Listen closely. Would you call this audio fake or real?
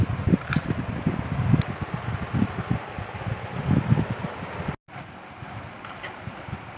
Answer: real